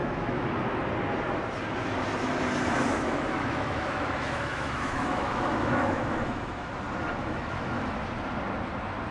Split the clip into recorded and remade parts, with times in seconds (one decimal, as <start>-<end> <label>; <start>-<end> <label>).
0.0-0.5 remade; 0.5-2.9 recorded; 2.9-6.7 remade; 6.7-7.2 recorded; 7.2-8.0 remade; 8.0-9.1 recorded